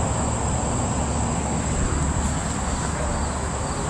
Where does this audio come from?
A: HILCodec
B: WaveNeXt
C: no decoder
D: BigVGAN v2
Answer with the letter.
C